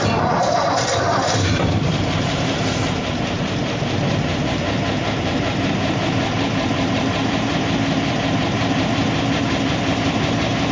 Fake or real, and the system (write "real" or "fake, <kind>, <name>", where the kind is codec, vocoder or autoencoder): fake, vocoder, BigVGAN v2